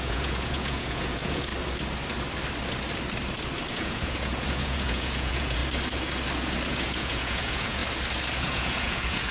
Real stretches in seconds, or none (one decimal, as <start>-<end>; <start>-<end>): 1.5-3.7; 5.6-6.7; 7.8-8.4